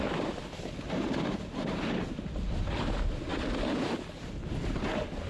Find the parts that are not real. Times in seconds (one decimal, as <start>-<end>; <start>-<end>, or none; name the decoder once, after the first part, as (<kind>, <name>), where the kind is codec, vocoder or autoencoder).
none